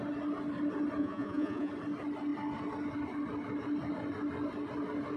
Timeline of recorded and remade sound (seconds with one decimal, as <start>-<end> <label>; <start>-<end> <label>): 0.0-1.0 recorded; 1.0-1.7 remade; 1.7-5.2 recorded